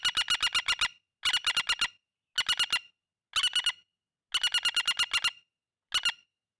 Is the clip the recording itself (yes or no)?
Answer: yes